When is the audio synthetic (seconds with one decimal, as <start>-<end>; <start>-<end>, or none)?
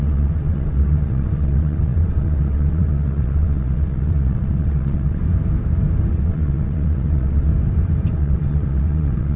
0.0-5.2; 6.1-7.5; 8.1-9.4